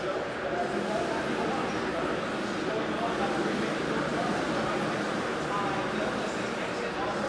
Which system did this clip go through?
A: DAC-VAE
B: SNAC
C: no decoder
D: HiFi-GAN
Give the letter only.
C